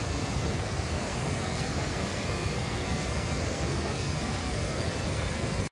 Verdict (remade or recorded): remade